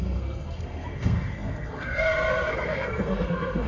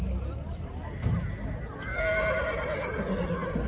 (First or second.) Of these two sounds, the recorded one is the second